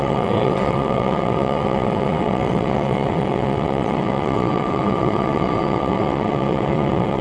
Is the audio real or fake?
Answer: fake